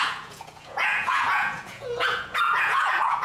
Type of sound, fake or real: fake